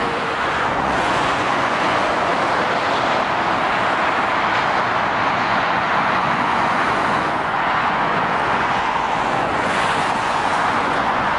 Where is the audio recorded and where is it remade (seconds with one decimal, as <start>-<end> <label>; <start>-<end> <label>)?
0.0-2.3 remade; 2.3-5.3 recorded; 5.3-11.4 remade

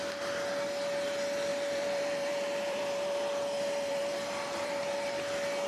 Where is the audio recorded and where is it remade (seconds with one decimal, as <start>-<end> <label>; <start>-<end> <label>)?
0.0-1.5 recorded; 1.5-4.9 remade; 4.9-5.7 recorded

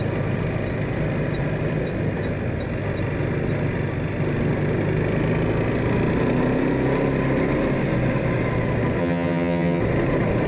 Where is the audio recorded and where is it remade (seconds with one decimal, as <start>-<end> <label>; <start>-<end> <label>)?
0.0-9.0 recorded; 9.0-9.8 remade; 9.8-10.5 recorded

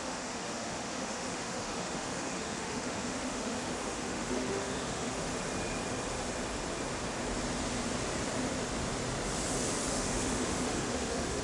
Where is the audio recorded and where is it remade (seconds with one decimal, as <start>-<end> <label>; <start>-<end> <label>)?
0.0-5.3 remade; 5.3-9.9 recorded; 9.9-11.4 remade

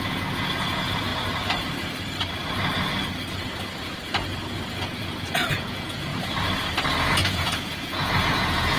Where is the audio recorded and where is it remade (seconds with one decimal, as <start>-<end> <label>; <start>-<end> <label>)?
0.0-1.1 remade; 1.1-4.6 recorded; 4.6-6.1 remade; 6.1-7.0 recorded; 7.0-8.8 remade

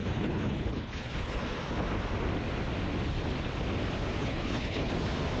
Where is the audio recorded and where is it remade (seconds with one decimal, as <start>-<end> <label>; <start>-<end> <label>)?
0.0-1.4 remade; 1.4-4.2 recorded; 4.2-4.9 remade; 4.9-5.4 recorded

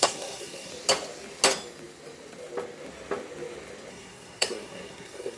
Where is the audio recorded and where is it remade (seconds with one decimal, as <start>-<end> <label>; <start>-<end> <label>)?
0.0-0.7 remade; 0.7-3.9 recorded; 3.9-5.4 remade